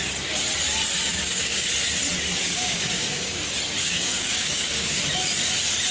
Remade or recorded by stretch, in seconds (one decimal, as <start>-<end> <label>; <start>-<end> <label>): 0.0-1.1 recorded; 1.1-1.7 remade; 1.7-2.4 recorded; 2.4-3.4 remade; 3.4-3.8 recorded; 3.8-5.0 remade; 5.0-5.9 recorded